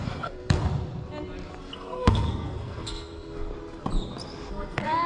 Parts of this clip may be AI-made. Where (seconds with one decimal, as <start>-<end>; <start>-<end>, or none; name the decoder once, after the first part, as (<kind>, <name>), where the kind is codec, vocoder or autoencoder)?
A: 0.0-0.6 (codec, SNAC); 1.6-3.5; 4.5-5.1